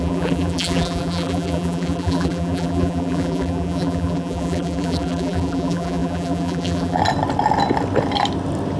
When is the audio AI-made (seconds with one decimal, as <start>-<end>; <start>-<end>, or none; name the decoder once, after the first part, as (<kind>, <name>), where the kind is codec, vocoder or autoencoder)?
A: 0.0-7.0 (vocoder, BigVGAN v2)